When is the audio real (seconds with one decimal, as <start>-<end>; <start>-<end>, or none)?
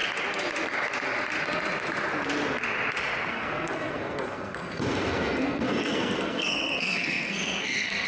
0.0-3.3